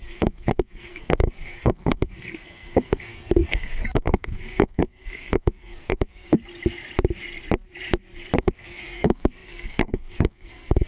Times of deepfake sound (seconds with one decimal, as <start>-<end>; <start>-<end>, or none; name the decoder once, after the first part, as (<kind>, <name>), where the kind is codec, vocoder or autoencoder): 0.0-6.4 (codec, SNAC); 8.4-10.9